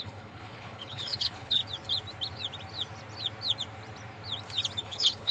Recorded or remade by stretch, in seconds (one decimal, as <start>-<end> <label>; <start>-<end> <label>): 0.0-1.6 remade; 1.6-4.8 recorded; 4.8-5.3 remade